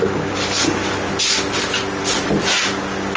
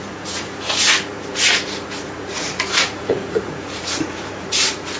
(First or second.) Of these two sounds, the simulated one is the second